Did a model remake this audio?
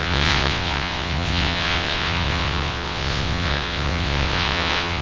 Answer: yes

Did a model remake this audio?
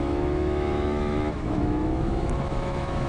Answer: yes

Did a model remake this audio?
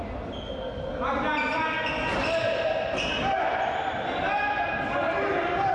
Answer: no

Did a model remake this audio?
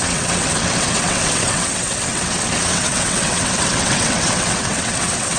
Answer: yes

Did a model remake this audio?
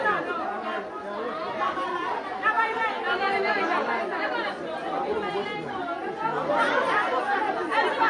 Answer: no